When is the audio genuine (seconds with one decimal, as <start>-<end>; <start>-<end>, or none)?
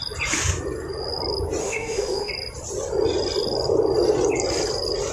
0.0-1.6; 2.3-5.1